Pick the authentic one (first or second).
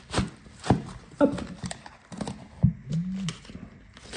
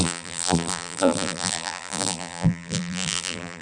first